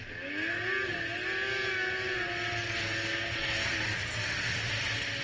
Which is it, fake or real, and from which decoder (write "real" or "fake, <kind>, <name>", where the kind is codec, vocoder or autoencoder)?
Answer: real